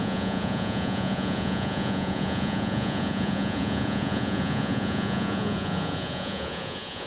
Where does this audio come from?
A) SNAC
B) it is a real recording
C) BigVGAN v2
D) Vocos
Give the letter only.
D